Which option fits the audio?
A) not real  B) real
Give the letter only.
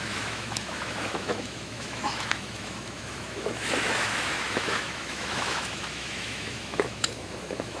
A